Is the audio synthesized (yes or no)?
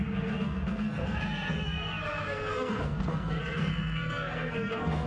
yes